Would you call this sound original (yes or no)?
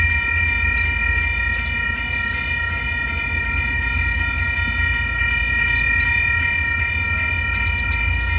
yes